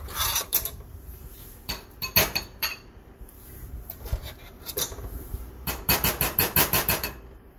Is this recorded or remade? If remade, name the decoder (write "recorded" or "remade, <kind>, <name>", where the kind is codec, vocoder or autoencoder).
remade, vocoder, BigVGAN v2